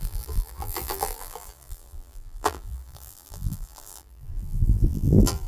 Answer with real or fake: fake